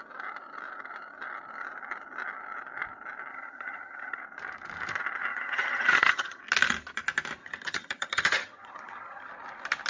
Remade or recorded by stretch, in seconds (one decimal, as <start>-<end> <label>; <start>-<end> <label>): 0.0-3.3 recorded; 3.3-4.2 remade; 4.2-5.3 recorded; 5.3-6.4 remade; 6.4-7.4 recorded; 7.4-9.3 remade; 9.3-9.9 recorded

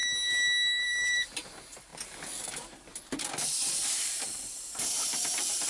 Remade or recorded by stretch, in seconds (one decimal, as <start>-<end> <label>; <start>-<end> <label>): 0.0-0.8 recorded; 0.8-1.9 remade; 1.9-2.4 recorded; 2.4-2.9 remade; 2.9-4.0 recorded; 4.0-5.7 remade